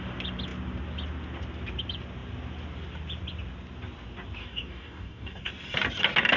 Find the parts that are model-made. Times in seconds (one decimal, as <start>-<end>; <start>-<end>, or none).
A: 4.4-5.5